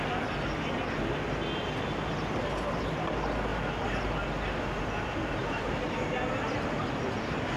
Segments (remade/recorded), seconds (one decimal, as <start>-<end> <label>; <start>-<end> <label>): 0.0-7.6 recorded